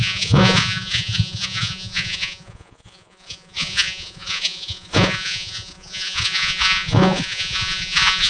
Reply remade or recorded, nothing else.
remade